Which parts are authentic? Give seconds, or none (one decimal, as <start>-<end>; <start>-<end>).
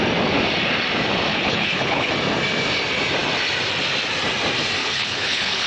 0.0-1.3; 2.1-4.8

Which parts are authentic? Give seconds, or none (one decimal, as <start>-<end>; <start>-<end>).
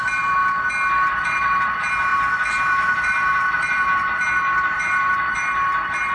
0.4-1.1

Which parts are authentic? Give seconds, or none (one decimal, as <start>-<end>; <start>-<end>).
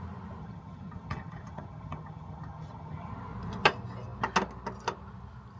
0.0-0.4; 3.1-5.6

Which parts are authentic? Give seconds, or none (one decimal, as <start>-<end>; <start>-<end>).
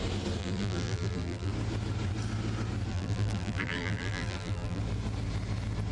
0.0-0.4; 1.5-2.9; 4.8-5.9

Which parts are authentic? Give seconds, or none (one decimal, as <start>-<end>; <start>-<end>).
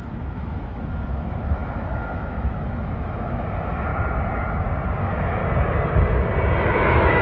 3.9-5.0; 5.4-6.6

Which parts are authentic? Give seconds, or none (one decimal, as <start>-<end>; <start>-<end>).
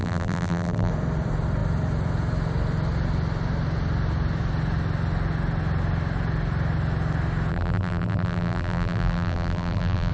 0.9-7.5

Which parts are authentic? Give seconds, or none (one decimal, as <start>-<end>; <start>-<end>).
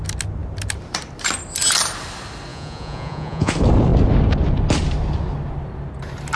0.0-2.5; 3.5-6.4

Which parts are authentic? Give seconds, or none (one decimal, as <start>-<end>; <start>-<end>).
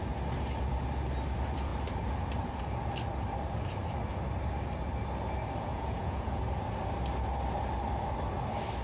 0.0-5.7; 6.4-8.8